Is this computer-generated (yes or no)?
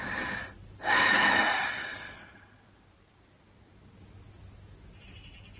no